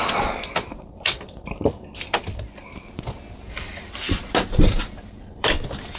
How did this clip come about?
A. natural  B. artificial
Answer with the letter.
B